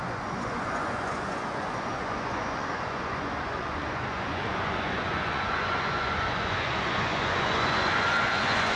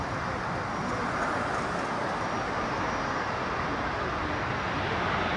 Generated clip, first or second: first